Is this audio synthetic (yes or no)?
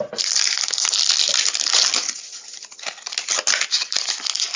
no